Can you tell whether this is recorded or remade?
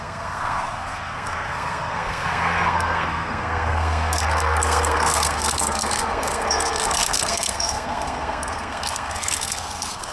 remade